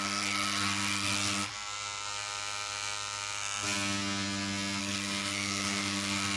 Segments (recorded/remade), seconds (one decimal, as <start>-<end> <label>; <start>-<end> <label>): 0.0-1.5 remade; 1.5-4.8 recorded; 4.8-6.4 remade